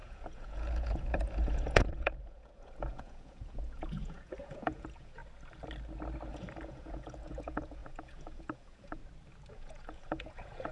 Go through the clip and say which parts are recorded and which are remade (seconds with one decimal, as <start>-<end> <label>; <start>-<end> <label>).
0.0-5.2 remade; 5.2-6.3 recorded; 6.3-9.0 remade; 9.0-9.5 recorded; 9.5-10.7 remade